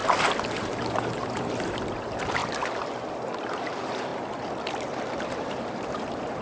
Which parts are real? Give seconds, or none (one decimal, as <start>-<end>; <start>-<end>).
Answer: 0.0-0.6; 2.4-3.4; 4.1-4.7